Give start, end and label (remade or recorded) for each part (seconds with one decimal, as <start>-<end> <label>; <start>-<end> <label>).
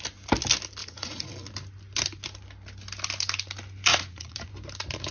0.0-0.8 recorded; 0.8-1.3 remade; 1.3-3.9 recorded; 3.9-4.5 remade; 4.5-5.1 recorded